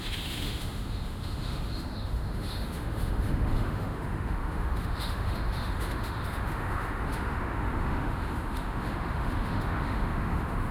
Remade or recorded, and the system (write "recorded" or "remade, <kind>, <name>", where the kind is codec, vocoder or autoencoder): remade, autoencoder, DAC-VAE